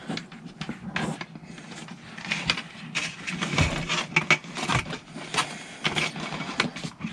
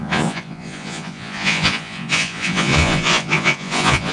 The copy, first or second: second